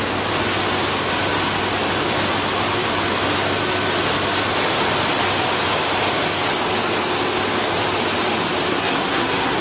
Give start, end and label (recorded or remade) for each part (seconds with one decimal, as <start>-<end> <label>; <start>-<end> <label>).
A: 0.0-8.7 recorded; 8.7-9.6 remade